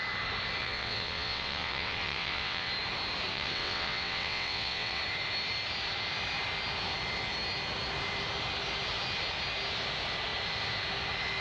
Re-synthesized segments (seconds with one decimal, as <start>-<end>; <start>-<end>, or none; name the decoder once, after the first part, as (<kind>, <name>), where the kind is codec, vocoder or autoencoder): 0.6-2.7 (vocoder, WaveNeXt); 3.3-5.0